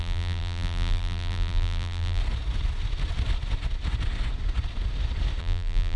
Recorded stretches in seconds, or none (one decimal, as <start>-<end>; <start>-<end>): 2.2-5.4

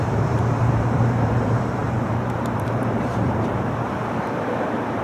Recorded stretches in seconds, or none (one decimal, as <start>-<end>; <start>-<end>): none

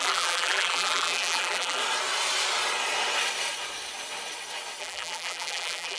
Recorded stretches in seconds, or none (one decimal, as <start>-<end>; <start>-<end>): 1.8-4.8

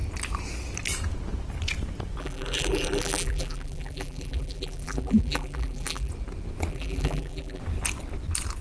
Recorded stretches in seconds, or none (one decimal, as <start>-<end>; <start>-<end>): 0.0-2.2; 6.1-6.7; 7.6-8.6

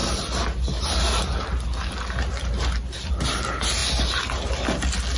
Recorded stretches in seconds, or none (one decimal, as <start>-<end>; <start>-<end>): 0.0-5.2